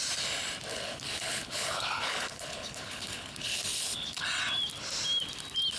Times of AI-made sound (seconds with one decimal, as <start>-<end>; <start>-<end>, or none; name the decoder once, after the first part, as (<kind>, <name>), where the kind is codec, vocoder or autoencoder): 0.7-4.2 (codec, HILCodec)

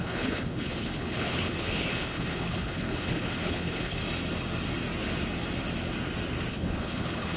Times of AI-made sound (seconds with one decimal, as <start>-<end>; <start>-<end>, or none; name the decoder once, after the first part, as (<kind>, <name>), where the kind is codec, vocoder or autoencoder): 0.0-4.0 (codec, HILCodec); 6.5-7.4

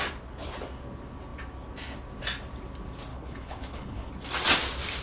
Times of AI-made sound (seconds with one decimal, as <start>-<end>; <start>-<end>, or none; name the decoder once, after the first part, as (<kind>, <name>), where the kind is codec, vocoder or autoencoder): 3.1-4.1 (codec, HILCodec)

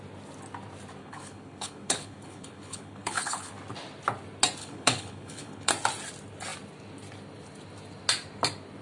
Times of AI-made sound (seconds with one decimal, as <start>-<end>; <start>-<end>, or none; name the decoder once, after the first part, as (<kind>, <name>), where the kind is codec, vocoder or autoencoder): 1.0-3.5 (codec, HILCodec); 4.6-5.7

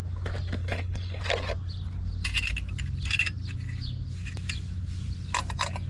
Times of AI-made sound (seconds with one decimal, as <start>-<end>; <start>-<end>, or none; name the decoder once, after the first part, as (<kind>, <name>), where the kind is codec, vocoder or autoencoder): 0.6-1.2 (codec, HILCodec)

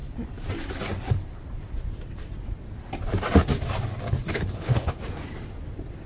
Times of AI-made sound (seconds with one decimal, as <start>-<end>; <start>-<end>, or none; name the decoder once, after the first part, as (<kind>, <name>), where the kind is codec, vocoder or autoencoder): 4.3-5.0 (codec, HILCodec)